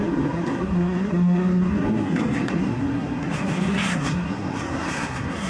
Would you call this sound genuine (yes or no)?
no